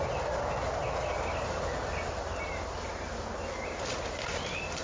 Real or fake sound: real